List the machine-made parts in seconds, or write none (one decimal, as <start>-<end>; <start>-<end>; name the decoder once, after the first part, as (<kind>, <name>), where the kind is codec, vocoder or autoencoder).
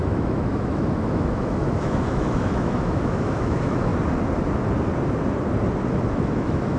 0.0-3.9 (autoencoder, DAC-VAE); 6.1-6.8